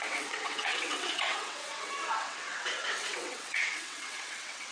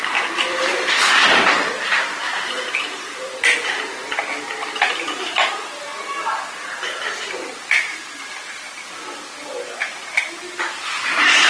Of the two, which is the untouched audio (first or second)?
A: second